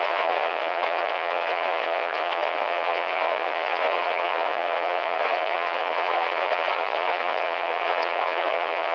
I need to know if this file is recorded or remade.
remade